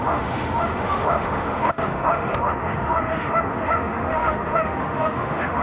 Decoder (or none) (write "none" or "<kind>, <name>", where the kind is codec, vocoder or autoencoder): autoencoder, DAC-VAE